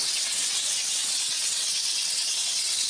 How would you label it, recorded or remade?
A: remade